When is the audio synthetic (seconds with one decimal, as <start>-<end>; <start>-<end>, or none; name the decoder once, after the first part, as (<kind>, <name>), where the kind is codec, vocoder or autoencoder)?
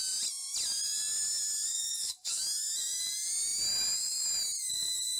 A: 1.7-2.4 (codec, DAC)